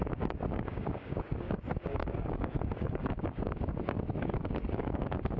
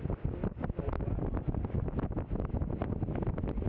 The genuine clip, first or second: second